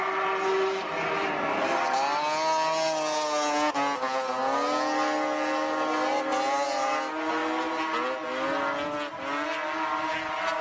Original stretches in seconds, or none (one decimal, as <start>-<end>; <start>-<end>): 0.0-10.6